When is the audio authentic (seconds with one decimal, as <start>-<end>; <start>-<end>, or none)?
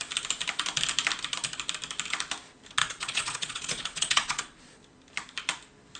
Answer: 0.0-2.8; 4.8-6.0